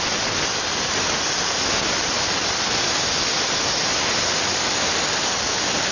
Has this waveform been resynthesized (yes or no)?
no